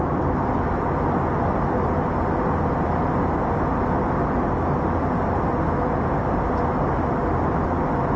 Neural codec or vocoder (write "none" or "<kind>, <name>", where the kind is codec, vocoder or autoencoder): none